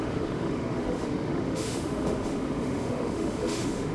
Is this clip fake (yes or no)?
yes